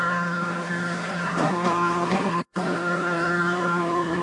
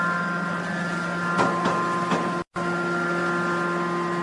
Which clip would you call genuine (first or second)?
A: second